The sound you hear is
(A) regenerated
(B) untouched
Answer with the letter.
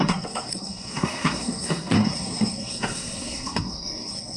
A